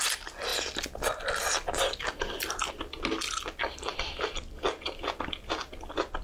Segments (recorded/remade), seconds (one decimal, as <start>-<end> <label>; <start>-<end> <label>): 0.0-6.2 recorded